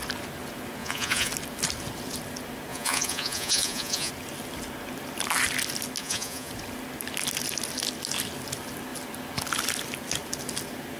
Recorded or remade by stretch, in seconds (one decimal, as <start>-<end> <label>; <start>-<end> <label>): 0.0-0.8 recorded; 0.8-1.3 remade; 1.3-2.7 recorded; 2.7-4.1 remade; 4.1-6.0 recorded; 6.0-6.5 remade; 6.5-11.0 recorded